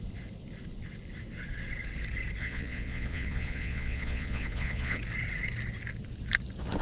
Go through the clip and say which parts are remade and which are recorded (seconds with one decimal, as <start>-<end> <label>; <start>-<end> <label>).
0.0-2.4 recorded; 2.4-5.0 remade; 5.0-6.8 recorded

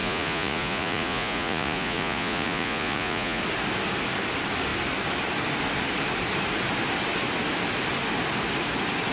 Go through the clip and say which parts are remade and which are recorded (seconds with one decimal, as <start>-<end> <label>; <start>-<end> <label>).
0.0-3.4 remade; 3.4-9.1 recorded